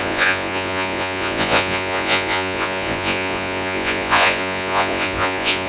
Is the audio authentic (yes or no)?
no